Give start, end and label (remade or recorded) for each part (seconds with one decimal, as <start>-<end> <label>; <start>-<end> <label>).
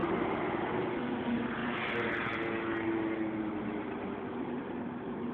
0.0-5.3 recorded